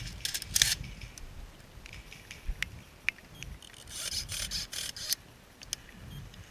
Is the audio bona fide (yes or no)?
yes